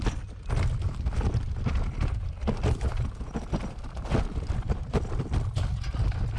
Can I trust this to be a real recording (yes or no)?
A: yes